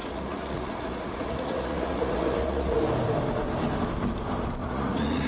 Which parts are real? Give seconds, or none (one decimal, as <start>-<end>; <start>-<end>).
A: 2.8-4.6